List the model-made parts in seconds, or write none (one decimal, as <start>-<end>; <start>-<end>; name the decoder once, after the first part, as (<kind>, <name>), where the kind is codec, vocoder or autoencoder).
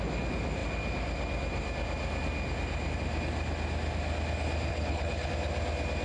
4.7-5.3 (codec, HILCodec)